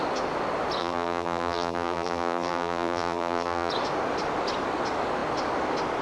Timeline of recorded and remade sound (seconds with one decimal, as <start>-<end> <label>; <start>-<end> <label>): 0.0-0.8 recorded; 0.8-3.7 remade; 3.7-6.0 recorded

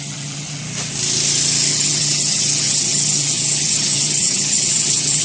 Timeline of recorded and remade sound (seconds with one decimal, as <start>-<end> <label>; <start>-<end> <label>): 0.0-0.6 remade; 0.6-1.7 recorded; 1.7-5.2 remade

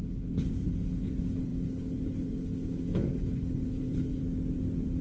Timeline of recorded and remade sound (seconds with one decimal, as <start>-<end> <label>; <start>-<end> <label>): 0.0-4.2 remade; 4.2-5.0 recorded

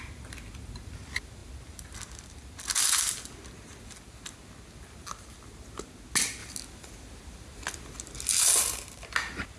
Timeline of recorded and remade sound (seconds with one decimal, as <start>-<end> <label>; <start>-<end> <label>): 0.0-9.6 recorded

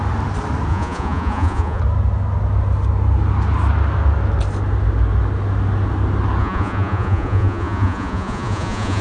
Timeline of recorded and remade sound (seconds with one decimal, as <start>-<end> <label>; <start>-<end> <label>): 0.0-0.7 recorded; 0.7-1.8 remade; 1.8-6.4 recorded; 6.4-9.0 remade

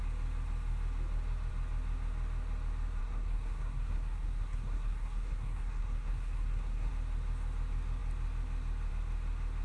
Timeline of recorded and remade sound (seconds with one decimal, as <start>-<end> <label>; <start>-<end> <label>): 0.0-3.0 recorded; 3.0-6.9 remade; 6.9-9.6 recorded

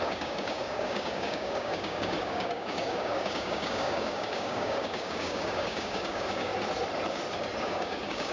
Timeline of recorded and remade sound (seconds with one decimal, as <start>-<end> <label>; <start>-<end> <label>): 0.0-6.5 remade; 6.5-7.6 recorded; 7.6-8.3 remade